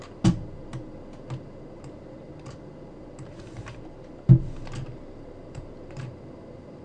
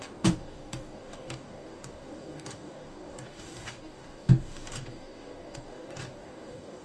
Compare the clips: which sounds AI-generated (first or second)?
second